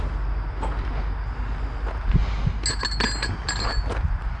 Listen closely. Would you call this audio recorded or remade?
recorded